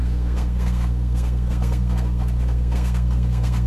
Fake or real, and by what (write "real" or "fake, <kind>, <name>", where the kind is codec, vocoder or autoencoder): fake, codec, SNAC